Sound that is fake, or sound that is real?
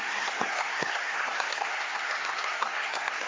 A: fake